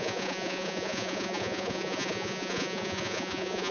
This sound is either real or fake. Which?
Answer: fake